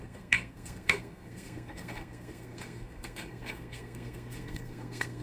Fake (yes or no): yes